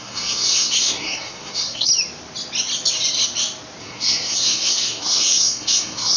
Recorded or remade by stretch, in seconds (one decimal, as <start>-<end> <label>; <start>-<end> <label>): 0.0-1.9 remade; 1.9-3.8 recorded; 3.8-6.2 remade